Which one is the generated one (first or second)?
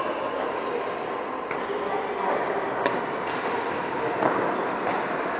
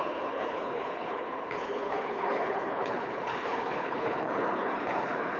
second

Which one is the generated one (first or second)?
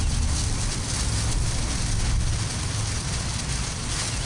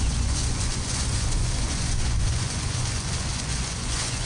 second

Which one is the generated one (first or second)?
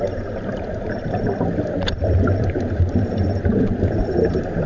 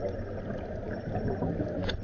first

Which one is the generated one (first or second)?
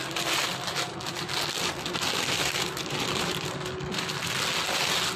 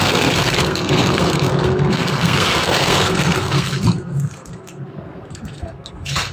second